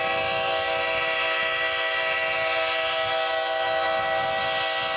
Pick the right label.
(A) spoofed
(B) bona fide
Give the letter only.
B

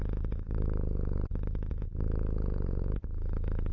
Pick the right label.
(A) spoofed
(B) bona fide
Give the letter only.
B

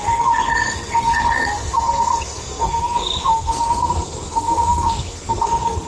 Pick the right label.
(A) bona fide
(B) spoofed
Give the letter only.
B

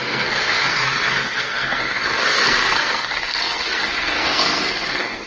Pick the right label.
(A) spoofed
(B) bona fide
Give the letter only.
A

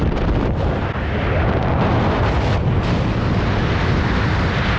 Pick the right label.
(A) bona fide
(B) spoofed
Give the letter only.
A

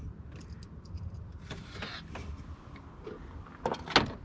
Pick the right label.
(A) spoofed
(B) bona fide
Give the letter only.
B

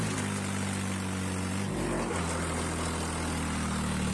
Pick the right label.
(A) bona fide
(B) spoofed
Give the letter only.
A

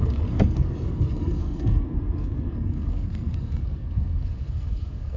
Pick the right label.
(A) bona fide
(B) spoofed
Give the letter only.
B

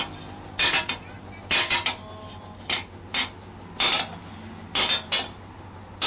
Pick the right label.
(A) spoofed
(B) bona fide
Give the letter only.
B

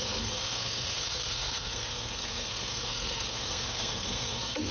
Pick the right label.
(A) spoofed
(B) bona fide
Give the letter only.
A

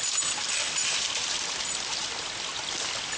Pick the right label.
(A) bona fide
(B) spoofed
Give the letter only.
A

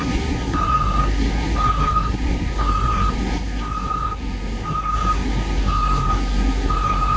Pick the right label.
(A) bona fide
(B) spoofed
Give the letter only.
B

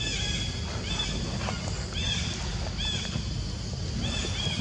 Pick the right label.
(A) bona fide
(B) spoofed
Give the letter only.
A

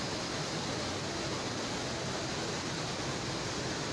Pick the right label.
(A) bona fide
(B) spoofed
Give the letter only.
A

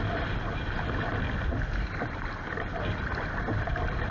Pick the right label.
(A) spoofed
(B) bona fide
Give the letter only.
B